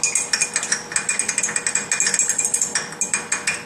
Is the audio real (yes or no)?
yes